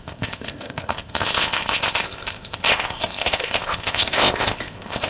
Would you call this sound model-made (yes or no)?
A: yes